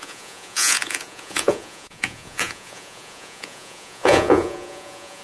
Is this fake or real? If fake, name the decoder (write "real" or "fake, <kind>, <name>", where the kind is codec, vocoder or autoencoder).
fake, vocoder, Vocos